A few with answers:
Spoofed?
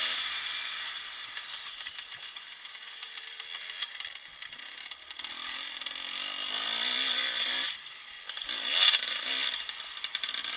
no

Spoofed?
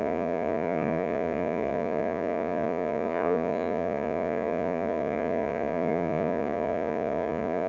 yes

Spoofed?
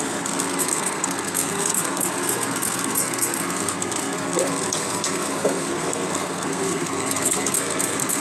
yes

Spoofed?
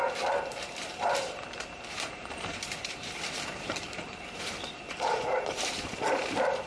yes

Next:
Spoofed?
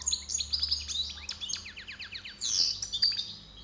no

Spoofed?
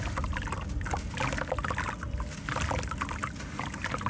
no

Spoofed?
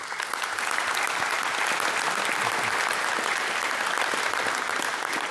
no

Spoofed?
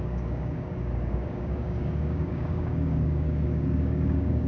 yes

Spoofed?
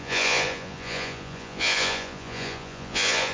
yes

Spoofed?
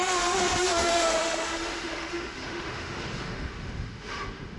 yes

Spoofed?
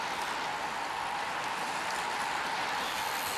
no